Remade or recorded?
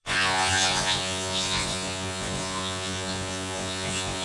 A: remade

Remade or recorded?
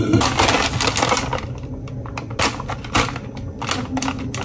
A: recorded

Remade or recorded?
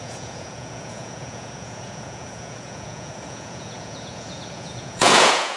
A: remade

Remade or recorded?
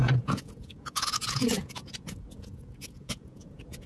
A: remade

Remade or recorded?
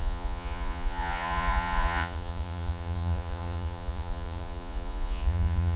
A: remade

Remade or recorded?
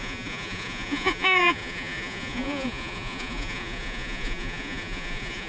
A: remade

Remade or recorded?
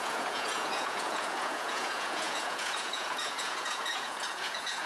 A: remade